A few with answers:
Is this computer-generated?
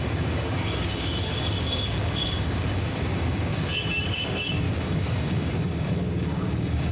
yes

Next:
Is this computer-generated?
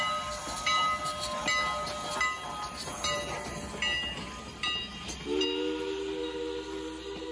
no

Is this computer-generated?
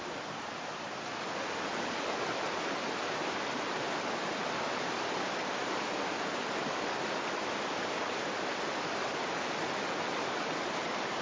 no